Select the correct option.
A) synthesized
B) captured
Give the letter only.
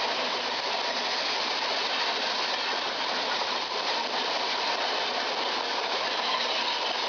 B